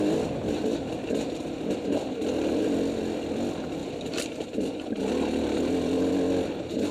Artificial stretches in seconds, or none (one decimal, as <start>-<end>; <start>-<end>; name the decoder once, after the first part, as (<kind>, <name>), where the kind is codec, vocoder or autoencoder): 3.8-6.1 (vocoder, BigVGAN v2)